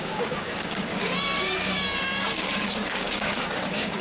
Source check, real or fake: fake